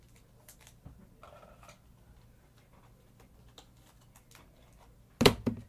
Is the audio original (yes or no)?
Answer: yes